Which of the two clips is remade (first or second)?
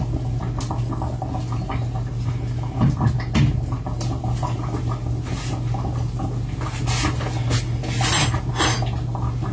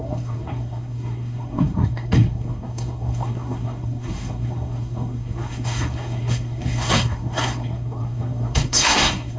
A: second